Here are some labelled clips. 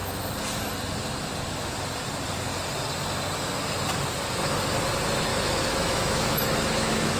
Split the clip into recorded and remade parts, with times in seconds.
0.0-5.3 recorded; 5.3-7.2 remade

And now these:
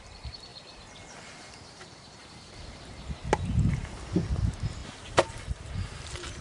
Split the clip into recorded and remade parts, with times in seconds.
0.0-2.2 remade; 2.2-3.6 recorded; 3.6-6.4 remade

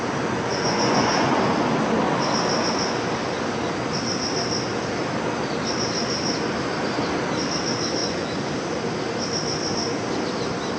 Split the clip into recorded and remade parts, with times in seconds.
0.0-0.5 recorded; 0.5-1.4 remade; 1.4-8.0 recorded; 8.0-8.5 remade; 8.5-10.8 recorded

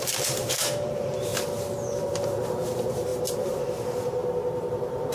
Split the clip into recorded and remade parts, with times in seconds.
0.0-1.3 remade; 1.3-2.0 recorded; 2.0-5.1 remade

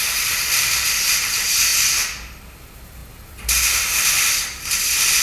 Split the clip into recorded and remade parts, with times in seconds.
0.0-1.7 remade; 1.7-2.4 recorded; 2.4-5.2 remade